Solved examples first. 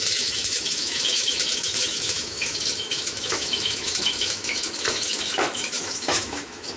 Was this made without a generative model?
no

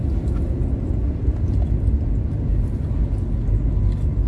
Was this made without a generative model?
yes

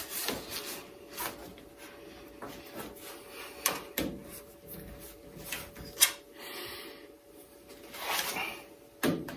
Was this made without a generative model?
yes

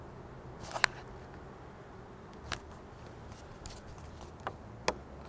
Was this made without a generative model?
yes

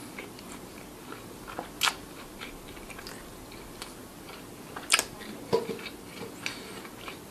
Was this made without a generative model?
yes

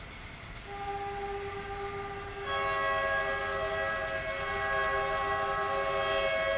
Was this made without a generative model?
yes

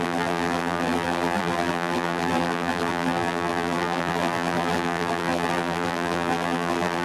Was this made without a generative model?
no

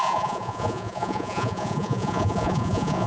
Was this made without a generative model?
no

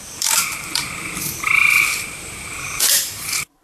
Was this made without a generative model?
no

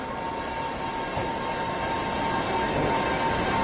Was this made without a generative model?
yes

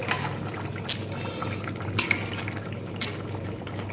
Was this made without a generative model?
yes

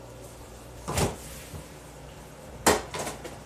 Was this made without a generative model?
yes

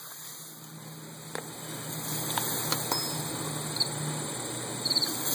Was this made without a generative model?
yes